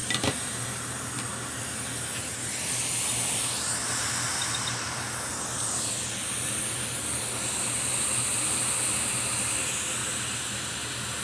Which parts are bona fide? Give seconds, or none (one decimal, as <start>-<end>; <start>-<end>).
0.0-11.2